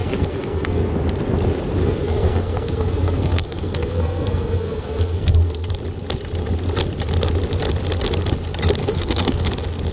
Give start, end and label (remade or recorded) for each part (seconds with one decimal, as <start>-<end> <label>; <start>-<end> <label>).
0.0-0.9 remade; 0.9-1.8 recorded; 1.8-5.7 remade; 5.7-8.8 recorded; 8.8-9.5 remade; 9.5-9.9 recorded